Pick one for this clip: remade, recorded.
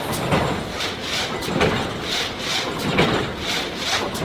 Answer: recorded